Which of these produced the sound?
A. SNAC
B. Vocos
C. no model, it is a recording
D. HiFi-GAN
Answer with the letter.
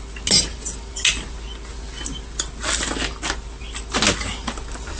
C